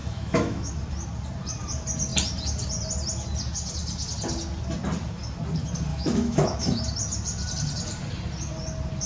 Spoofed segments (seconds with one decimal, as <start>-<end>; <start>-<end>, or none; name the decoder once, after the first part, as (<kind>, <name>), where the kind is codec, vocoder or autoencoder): 0.0-0.7 (autoencoder, DAC-VAE); 5.9-6.8